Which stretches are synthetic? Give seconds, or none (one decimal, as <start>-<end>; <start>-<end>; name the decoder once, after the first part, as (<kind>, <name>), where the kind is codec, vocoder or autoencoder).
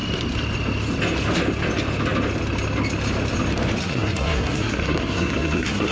3.8-5.9 (codec, SNAC)